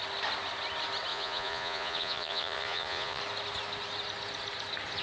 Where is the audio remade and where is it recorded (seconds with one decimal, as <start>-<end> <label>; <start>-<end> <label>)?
0.0-1.1 recorded; 1.1-3.2 remade; 3.2-5.0 recorded